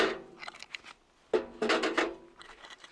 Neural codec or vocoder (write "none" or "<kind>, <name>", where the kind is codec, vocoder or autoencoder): none